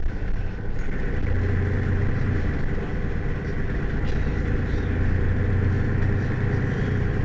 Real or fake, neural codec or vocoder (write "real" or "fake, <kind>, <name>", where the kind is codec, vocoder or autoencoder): real